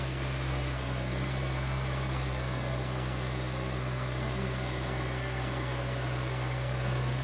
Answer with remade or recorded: remade